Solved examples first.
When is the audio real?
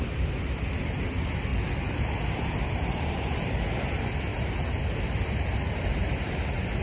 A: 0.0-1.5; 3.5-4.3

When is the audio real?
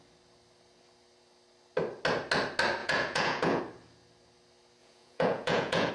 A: 0.0-2.8; 3.6-4.8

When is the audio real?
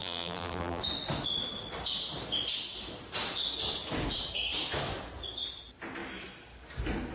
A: 0.8-7.1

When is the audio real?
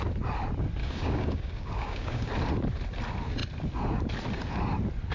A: 0.0-0.8; 2.3-5.1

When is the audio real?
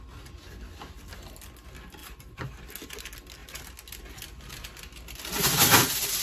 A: 0.0-2.0; 2.6-6.2